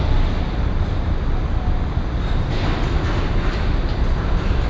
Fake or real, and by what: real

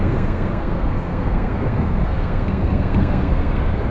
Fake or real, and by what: fake, codec, SNAC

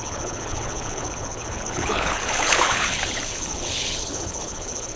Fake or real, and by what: fake, codec, HILCodec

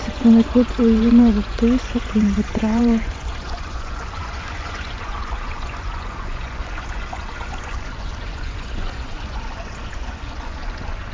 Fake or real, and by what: fake, vocoder, Vocos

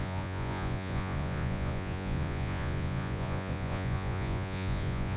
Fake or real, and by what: fake, vocoder, Vocos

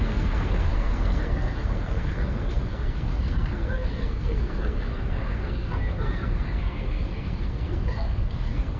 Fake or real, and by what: fake, codec, SNAC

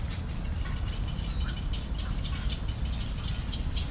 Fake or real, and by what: real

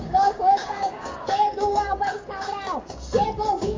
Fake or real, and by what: fake, codec, DAC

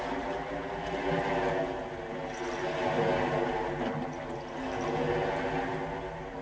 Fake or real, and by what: real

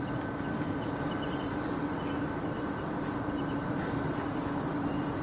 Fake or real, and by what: real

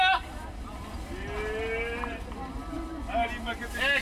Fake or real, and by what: real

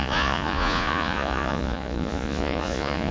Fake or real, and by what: fake, vocoder, Vocos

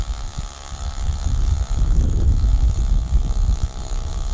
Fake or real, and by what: fake, codec, DAC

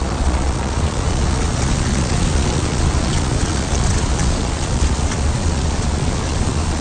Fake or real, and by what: fake, vocoder, Vocos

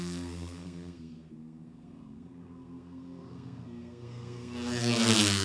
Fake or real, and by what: fake, codec, SNAC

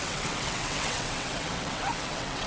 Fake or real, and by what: fake, vocoder, WaveNeXt